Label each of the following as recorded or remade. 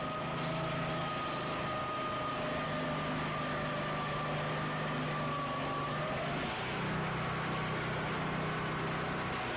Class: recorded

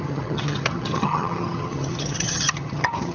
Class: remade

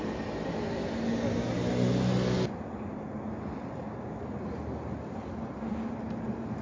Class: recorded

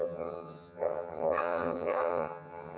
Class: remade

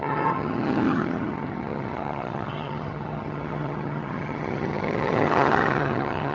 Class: remade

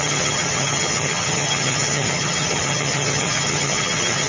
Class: remade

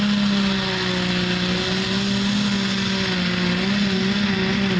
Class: recorded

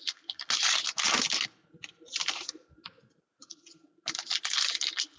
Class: recorded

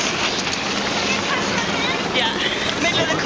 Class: recorded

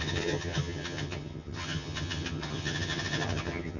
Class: remade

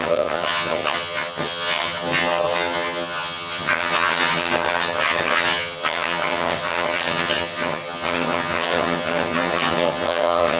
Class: remade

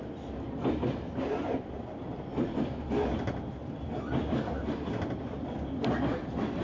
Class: recorded